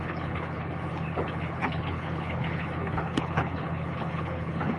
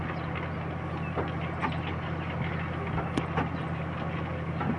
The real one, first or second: second